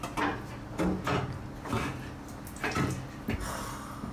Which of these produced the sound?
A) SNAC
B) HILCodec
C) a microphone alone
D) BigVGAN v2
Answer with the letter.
C